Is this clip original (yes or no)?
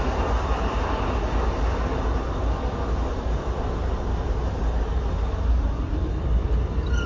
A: yes